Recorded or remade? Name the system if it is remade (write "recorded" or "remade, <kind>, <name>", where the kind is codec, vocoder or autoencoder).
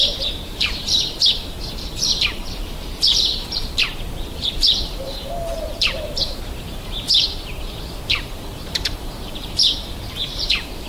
remade, vocoder, BigVGAN v2